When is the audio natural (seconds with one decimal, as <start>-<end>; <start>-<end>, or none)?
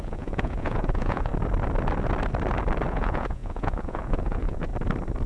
1.3-2.9; 4.7-5.3